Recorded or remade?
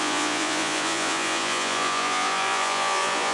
remade